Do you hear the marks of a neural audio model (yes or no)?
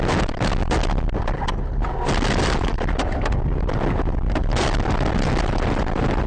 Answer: no